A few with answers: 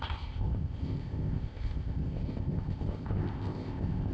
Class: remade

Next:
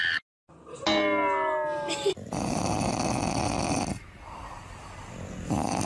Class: recorded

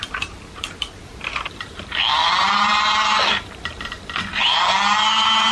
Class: remade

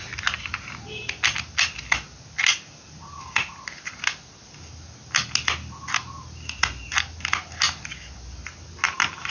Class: recorded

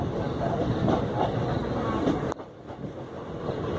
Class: recorded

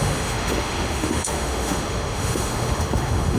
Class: remade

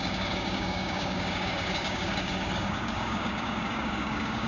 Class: remade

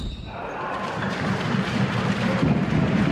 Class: remade